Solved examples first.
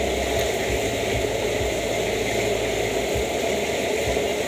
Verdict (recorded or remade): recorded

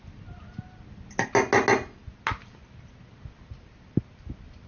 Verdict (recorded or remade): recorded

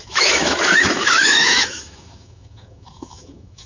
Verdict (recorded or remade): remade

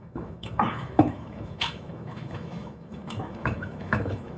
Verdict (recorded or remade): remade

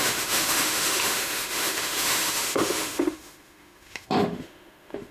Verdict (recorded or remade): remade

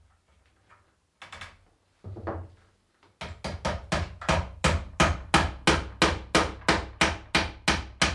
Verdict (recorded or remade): recorded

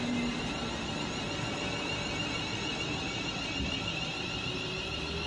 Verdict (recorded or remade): recorded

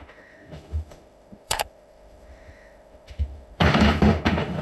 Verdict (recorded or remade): remade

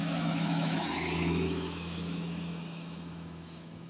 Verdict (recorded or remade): remade